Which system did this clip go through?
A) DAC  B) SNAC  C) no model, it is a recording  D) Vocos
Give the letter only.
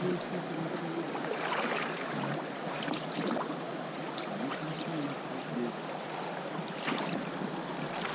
C